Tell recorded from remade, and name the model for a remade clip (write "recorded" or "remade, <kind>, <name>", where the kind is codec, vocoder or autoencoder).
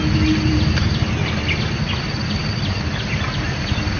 recorded